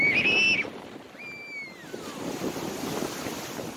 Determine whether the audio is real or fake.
real